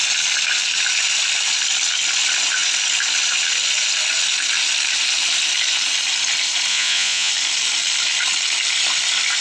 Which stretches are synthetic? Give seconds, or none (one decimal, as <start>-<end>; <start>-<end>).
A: 6.7-7.3